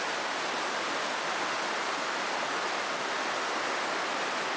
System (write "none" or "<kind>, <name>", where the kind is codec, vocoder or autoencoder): none